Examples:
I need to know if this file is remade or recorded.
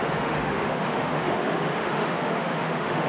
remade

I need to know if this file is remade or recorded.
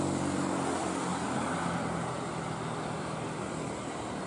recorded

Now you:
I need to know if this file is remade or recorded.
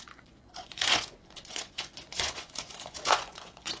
remade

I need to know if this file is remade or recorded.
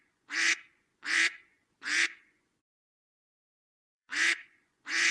remade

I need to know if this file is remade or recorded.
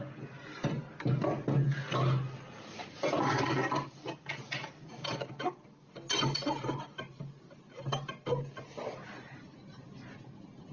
recorded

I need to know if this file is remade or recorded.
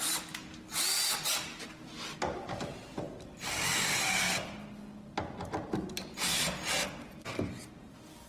recorded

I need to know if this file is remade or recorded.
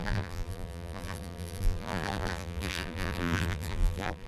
remade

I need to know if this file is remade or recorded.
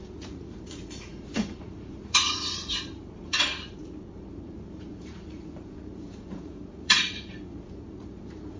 remade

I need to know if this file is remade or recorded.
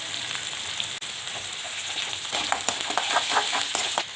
recorded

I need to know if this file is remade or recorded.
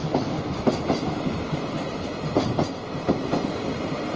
recorded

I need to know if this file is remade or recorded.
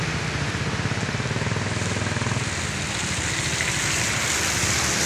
recorded